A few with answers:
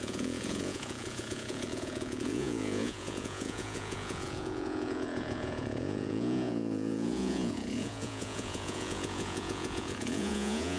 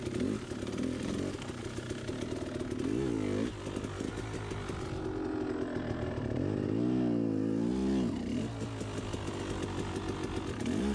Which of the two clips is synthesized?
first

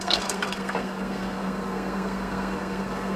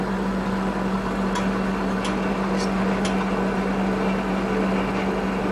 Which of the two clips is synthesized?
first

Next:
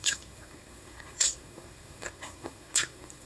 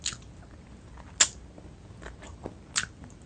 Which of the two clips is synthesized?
first